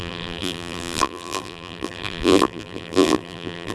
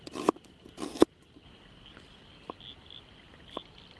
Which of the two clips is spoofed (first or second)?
first